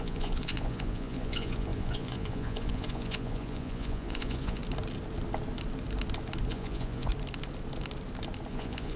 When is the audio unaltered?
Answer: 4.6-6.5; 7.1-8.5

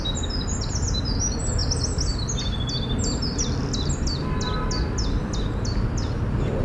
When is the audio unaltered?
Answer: 0.0-6.6

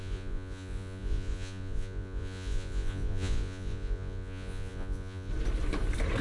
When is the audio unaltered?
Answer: 5.3-6.2